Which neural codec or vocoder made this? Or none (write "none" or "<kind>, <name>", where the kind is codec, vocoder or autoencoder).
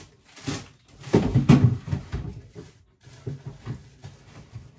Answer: none